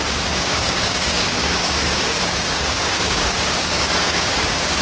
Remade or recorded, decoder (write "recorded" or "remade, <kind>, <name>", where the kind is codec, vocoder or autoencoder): remade, codec, DAC